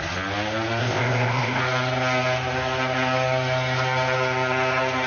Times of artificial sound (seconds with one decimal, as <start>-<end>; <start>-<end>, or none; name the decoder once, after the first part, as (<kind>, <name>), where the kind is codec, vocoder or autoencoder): 0.8-1.6 (codec, ZipCodec)

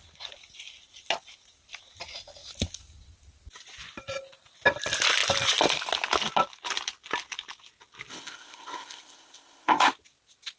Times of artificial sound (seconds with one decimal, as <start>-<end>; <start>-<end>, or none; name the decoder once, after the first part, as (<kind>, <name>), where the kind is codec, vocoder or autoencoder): 8.1-9.9 (codec, ZipCodec)